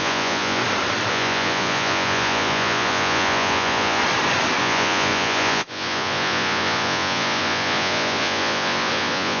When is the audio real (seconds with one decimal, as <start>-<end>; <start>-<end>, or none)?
0.6-1.1; 4.0-4.6